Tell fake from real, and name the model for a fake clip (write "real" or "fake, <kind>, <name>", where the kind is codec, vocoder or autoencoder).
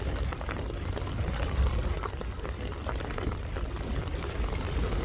real